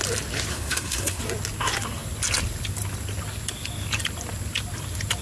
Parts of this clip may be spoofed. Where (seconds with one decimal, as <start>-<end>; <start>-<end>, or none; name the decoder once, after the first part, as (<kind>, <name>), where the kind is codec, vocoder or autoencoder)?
0.5-1.2 (codec, SNAC)

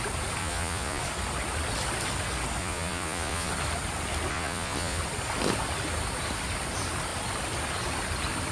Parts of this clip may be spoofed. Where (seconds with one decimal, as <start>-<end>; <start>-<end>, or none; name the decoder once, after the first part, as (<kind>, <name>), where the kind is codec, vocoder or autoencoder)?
0.4-1.0 (vocoder, Vocos); 2.6-3.5; 4.3-5.0

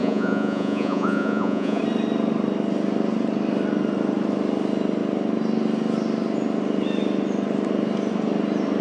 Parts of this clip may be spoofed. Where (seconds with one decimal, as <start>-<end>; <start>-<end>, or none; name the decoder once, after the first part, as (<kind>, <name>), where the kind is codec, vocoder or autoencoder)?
0.0-1.8 (vocoder, Vocos)